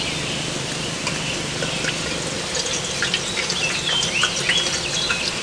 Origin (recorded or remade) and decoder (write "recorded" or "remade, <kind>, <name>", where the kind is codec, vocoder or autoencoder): recorded